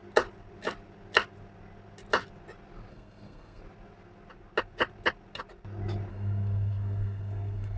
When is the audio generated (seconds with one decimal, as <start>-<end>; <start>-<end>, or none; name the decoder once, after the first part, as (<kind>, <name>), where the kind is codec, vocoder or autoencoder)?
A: 2.9-3.6 (codec, SNAC); 6.1-7.8